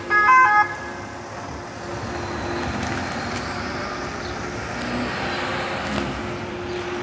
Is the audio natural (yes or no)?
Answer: yes